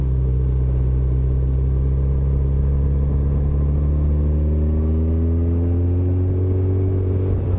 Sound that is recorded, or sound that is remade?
recorded